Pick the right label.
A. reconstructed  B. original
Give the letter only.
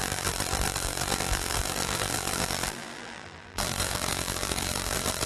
A